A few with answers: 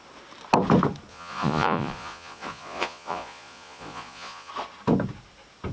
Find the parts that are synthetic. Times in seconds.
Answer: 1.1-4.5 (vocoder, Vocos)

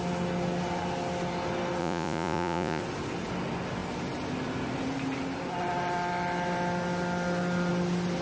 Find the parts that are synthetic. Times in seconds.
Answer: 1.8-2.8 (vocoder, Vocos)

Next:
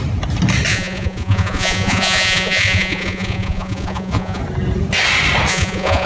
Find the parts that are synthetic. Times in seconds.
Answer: 0.7-4.4 (vocoder, Vocos); 5.5-6.1

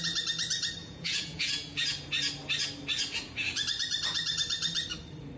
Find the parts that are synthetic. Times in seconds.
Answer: 0.8-1.8 (vocoder, Vocos)